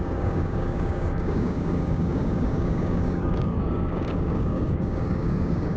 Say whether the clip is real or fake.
fake